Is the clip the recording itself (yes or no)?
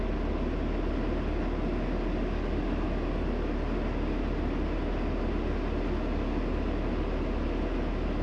yes